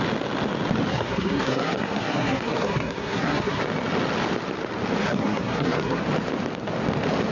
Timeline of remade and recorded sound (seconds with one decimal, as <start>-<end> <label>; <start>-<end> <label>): 0.0-0.9 recorded; 0.9-3.6 remade; 3.6-5.0 recorded; 5.0-6.0 remade; 6.0-7.3 recorded